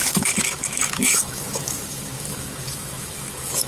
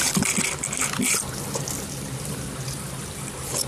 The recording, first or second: second